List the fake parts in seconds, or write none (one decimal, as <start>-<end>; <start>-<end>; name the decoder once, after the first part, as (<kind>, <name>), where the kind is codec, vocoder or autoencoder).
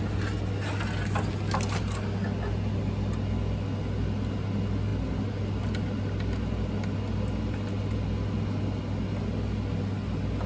none